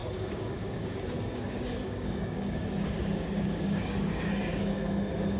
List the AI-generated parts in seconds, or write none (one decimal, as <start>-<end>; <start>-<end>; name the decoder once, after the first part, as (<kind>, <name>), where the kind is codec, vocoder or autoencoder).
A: 0.0-5.4 (codec, DAC)